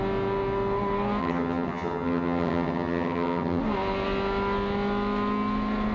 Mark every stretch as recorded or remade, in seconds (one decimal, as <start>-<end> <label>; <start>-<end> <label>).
0.0-1.2 recorded; 1.2-3.6 remade; 3.6-5.9 recorded